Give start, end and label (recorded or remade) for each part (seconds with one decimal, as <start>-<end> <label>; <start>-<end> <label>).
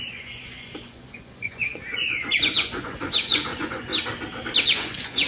0.0-3.9 remade; 3.9-4.6 recorded; 4.6-5.3 remade